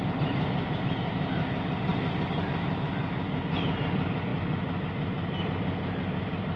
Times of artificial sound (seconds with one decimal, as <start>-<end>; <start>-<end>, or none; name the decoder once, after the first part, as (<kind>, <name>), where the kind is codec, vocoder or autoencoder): none